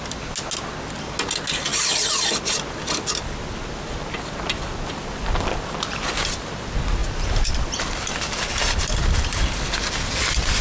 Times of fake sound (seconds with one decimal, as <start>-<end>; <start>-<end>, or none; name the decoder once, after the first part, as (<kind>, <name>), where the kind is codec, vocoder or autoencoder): 1.7-3.1 (vocoder, BigVGAN v2); 7.0-10.0